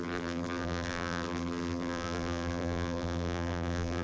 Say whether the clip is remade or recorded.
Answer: remade